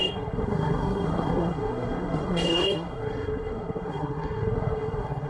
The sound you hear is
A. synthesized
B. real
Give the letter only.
A